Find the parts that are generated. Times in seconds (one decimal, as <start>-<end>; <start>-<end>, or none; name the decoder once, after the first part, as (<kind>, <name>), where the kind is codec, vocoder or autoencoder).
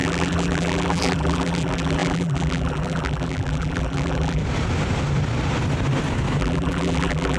0.0-4.4 (vocoder, BigVGAN v2); 6.4-7.4